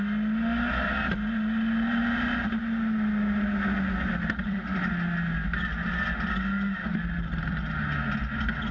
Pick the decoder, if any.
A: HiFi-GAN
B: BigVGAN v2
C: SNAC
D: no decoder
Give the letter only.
D